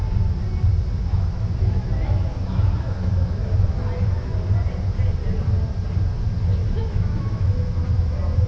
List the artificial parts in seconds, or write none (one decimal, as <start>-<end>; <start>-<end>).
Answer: 1.0-3.4; 6.6-7.7